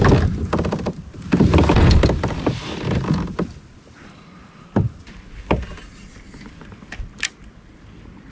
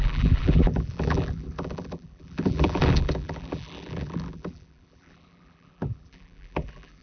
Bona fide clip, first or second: first